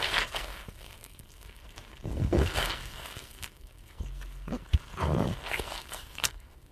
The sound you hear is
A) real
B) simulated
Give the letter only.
B